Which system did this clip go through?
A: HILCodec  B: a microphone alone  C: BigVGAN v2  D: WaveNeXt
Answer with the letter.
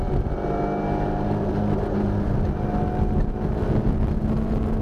B